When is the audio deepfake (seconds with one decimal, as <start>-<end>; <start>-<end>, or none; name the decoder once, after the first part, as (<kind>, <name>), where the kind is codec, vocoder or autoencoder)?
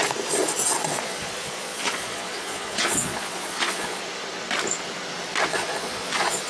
0.9-4.0 (vocoder, Vocos); 5.5-6.5